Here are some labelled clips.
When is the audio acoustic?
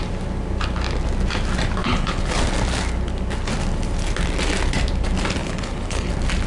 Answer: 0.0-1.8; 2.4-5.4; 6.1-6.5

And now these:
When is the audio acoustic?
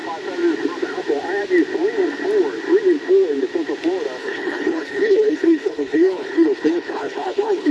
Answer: 0.0-4.2